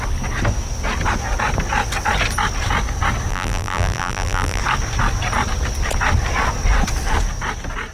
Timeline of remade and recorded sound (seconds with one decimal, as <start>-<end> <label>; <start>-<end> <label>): 0.0-3.3 recorded; 3.3-4.6 remade; 4.6-7.9 recorded